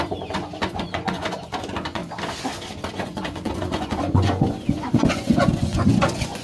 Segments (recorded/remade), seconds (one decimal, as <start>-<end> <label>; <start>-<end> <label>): 0.0-2.0 remade; 2.0-2.9 recorded; 2.9-6.4 remade